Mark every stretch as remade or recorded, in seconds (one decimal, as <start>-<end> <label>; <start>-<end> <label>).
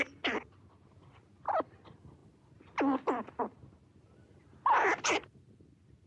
0.0-6.1 recorded